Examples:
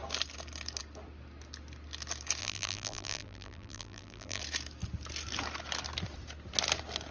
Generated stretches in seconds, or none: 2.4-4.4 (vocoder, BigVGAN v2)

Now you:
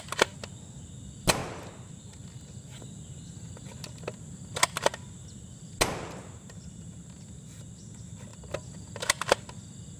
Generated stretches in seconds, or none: none

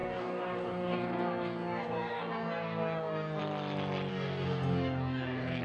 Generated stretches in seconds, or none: 0.0-3.4 (codec, DAC); 4.1-5.6